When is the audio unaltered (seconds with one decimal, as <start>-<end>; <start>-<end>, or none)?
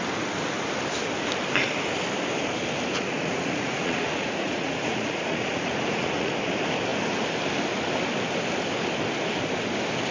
0.0-2.9; 6.3-10.1